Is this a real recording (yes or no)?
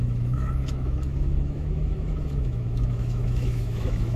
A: no